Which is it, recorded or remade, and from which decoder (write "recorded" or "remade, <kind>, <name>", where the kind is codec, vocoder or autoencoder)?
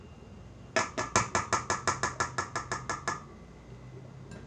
recorded